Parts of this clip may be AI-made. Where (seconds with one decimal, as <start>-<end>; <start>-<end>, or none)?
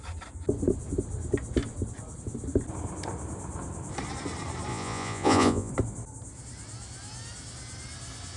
4.7-5.7